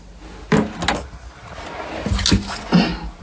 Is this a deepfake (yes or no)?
no